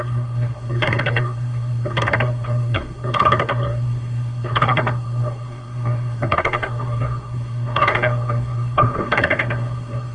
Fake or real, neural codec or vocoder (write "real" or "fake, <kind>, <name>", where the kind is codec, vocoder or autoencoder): fake, codec, SNAC